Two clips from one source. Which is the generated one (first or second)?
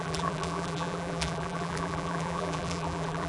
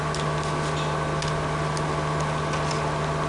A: first